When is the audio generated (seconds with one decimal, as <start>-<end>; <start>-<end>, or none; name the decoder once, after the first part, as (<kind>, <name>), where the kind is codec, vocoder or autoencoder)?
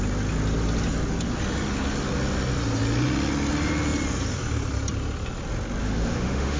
5.8-6.6 (autoencoder, DAC-VAE)